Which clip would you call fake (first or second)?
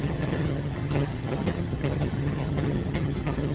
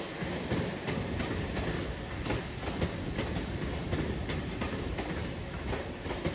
first